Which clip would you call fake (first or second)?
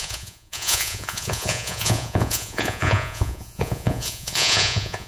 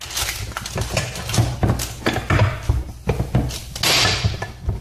first